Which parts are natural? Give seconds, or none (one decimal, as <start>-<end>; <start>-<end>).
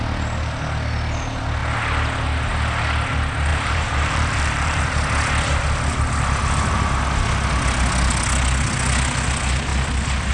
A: 0.0-3.5; 4.8-10.3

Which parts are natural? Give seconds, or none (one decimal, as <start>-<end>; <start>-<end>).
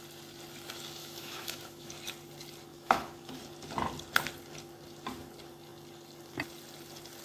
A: 0.0-1.0; 1.9-2.7; 3.4-7.2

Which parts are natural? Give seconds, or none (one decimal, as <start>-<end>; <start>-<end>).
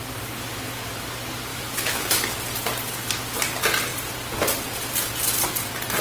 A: 0.0-1.5; 2.3-6.0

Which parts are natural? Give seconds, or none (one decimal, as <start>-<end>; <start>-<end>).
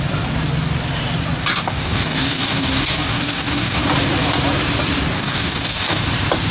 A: 0.0-1.5; 3.9-5.2; 6.0-6.5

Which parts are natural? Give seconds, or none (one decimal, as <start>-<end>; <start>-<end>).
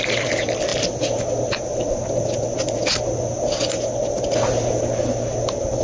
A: 0.0-5.8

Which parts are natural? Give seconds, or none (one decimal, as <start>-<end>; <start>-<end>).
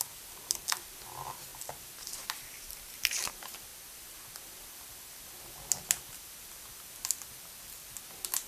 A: 0.0-1.5; 3.3-3.7; 5.0-8.5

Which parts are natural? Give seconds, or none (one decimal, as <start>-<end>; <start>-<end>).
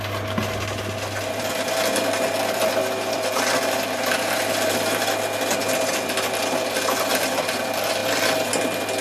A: 0.0-9.0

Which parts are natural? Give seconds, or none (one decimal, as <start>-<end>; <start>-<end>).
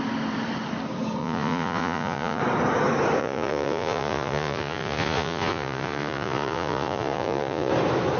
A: 0.0-1.2; 2.4-3.2; 7.7-8.2